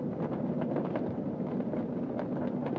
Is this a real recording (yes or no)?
yes